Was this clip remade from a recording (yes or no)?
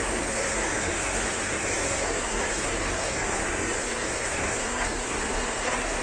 yes